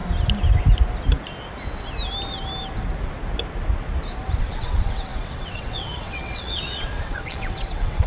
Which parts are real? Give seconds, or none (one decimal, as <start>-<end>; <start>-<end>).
0.0-4.4